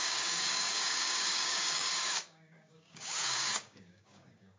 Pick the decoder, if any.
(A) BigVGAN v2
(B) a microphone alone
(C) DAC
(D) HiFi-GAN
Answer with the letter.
C